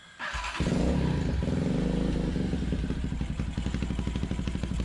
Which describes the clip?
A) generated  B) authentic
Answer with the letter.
B